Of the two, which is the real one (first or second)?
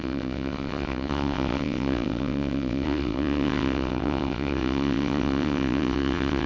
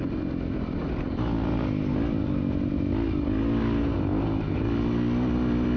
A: second